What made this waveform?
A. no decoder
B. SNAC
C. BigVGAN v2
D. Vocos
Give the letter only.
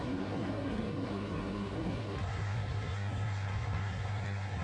B